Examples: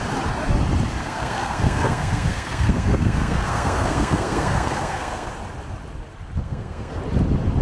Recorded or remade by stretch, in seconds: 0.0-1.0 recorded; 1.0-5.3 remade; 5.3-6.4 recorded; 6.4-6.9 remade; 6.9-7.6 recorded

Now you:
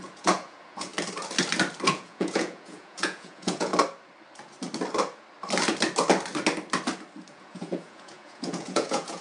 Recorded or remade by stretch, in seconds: 0.0-0.9 remade; 0.9-1.9 recorded; 1.9-3.7 remade; 3.7-7.3 recorded; 7.3-9.2 remade

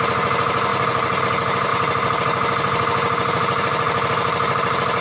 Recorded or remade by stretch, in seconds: 0.0-5.0 recorded

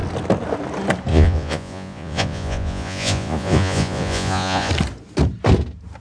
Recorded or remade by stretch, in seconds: 0.0-1.1 recorded; 1.1-4.7 remade; 4.7-6.0 recorded

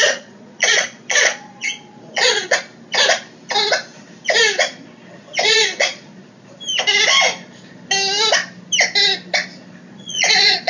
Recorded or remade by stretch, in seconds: 0.0-2.7 remade; 2.7-5.4 recorded; 5.4-6.2 remade; 6.2-9.9 recorded; 9.9-10.7 remade